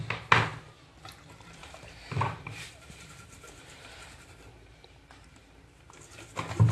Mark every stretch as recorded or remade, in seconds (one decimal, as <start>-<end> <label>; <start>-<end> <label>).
0.0-1.6 recorded; 1.6-5.6 remade; 5.6-6.7 recorded